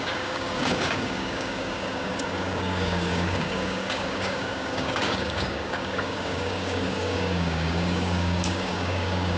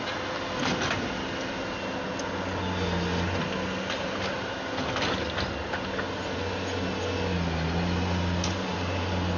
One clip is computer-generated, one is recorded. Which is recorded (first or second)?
second